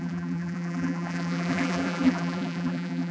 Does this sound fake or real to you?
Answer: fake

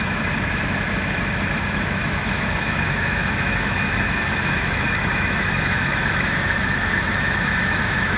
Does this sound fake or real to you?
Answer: fake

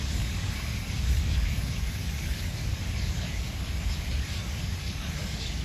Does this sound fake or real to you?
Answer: fake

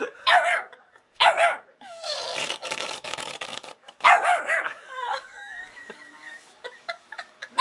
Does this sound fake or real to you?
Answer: fake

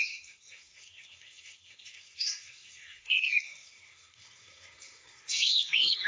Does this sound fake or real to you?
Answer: fake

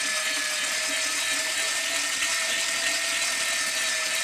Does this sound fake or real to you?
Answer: real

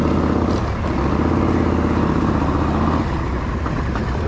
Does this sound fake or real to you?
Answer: real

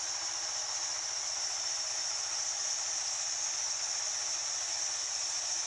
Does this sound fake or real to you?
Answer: real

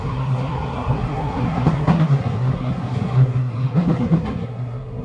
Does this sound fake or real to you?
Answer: fake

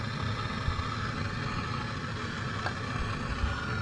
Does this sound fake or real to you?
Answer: real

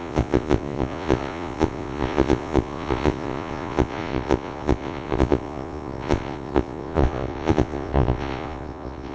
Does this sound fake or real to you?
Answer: fake